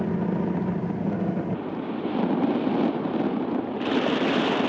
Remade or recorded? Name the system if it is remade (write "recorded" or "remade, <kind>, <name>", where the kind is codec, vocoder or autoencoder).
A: recorded